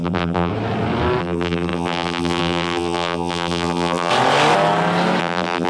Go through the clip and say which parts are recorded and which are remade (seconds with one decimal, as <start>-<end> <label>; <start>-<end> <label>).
0.0-0.5 remade; 0.5-1.2 recorded; 1.2-4.1 remade; 4.1-5.2 recorded; 5.2-5.7 remade